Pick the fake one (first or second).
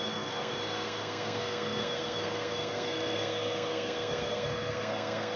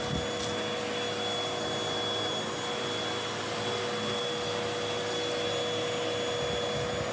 first